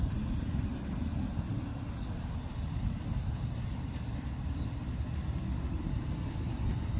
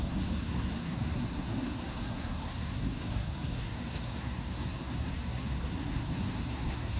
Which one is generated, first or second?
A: second